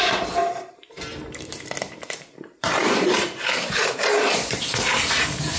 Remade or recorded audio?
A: remade